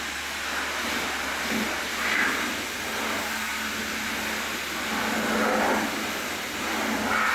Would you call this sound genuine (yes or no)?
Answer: yes